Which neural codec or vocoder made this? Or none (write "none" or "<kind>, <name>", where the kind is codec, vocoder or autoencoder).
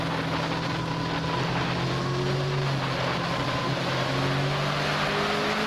none